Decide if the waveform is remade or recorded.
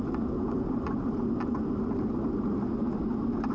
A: recorded